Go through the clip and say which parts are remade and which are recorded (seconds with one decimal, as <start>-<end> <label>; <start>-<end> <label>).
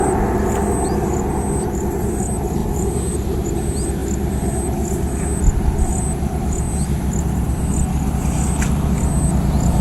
0.0-2.6 recorded; 2.6-3.5 remade; 3.5-9.8 recorded